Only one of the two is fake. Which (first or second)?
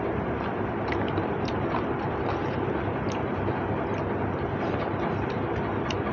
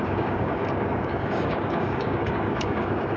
second